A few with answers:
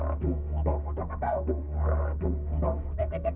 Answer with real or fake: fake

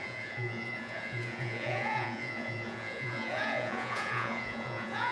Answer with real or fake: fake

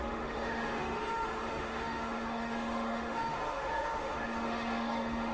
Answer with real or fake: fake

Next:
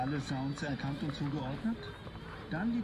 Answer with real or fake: real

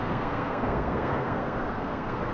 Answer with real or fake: fake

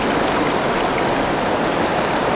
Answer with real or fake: real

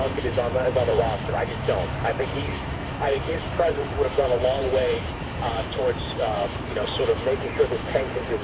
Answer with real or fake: fake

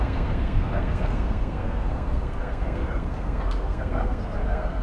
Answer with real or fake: fake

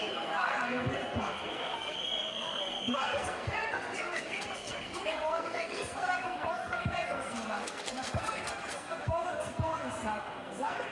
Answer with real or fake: fake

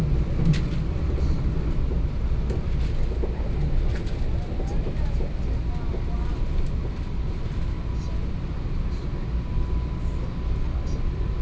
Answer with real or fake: real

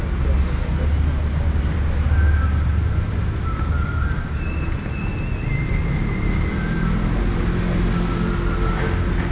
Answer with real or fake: real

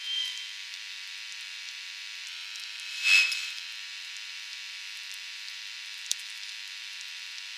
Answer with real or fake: fake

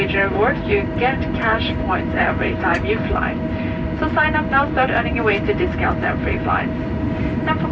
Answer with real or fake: fake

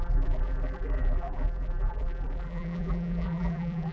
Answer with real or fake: fake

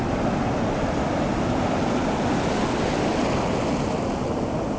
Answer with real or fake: real